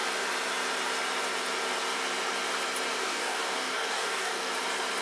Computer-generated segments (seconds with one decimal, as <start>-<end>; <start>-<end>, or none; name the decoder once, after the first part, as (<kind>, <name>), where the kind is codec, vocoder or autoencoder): 3.0-4.5 (codec, DAC)